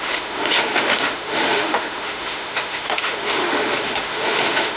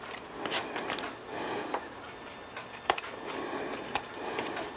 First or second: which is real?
second